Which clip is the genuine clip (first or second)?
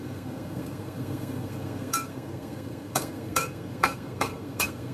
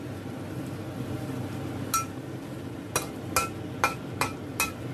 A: second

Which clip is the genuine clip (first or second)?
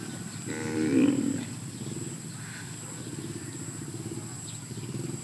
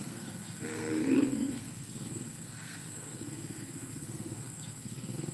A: first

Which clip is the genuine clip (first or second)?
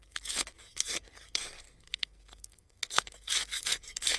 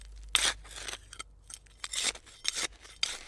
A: second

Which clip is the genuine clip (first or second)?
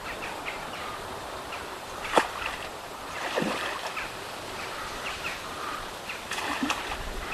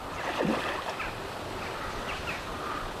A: second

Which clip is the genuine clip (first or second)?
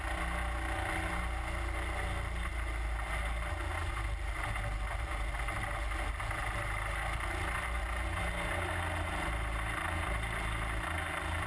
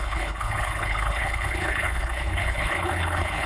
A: first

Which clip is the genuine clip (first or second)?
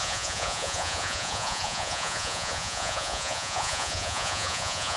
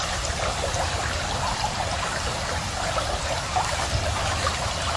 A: second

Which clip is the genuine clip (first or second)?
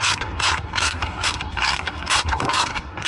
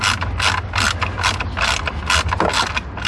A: second